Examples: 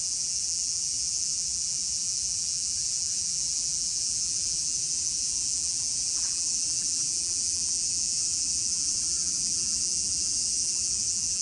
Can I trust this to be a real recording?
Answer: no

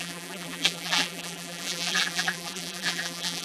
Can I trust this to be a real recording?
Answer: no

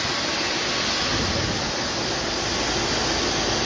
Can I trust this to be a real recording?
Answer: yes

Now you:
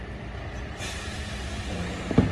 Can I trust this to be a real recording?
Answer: yes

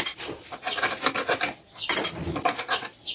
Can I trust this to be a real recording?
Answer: yes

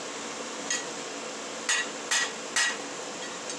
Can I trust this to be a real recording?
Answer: yes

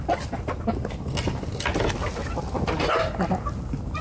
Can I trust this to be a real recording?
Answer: yes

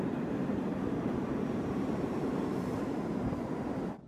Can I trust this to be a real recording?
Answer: no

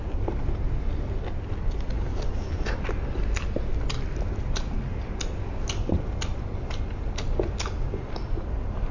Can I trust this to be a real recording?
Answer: yes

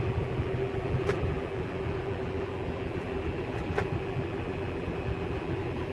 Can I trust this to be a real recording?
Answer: no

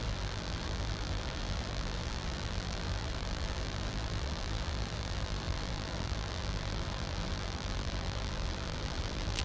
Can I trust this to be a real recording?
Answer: no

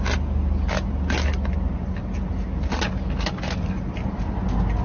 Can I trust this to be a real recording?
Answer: yes